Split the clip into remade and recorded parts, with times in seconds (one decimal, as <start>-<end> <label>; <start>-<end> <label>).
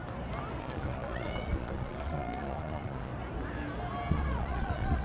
0.0-0.6 recorded; 0.6-3.1 remade; 3.1-4.1 recorded; 4.1-5.0 remade